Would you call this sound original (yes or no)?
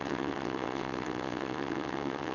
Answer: no